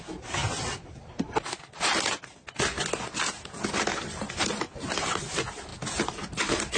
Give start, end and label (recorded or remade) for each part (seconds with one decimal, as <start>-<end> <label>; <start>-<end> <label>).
0.0-6.8 recorded